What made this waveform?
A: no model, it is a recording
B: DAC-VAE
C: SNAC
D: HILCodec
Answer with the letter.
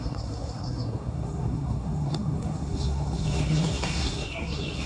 C